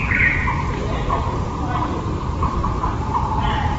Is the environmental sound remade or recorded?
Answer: remade